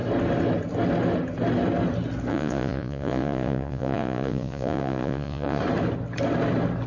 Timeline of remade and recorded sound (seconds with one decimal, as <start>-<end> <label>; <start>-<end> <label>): 0.0-2.3 recorded; 2.3-5.6 remade; 5.6-6.9 recorded